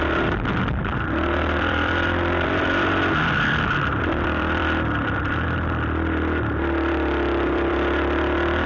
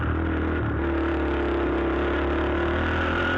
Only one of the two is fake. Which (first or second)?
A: first